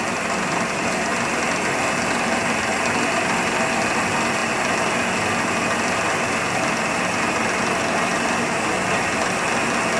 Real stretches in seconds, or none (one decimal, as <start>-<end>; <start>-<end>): 0.0-10.0